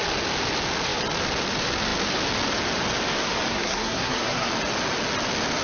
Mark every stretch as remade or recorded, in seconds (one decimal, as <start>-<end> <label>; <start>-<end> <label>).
0.0-3.5 recorded; 3.5-4.5 remade; 4.5-5.6 recorded